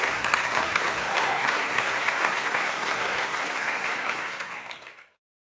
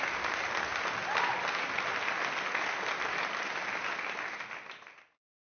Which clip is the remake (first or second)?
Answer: first